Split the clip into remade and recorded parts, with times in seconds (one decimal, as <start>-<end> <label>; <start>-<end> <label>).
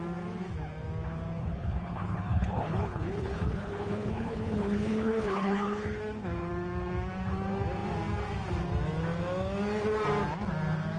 0.0-1.4 recorded; 1.4-6.0 remade; 6.0-11.0 recorded